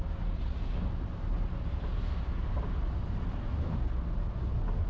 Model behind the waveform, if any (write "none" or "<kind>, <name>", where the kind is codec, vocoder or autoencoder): none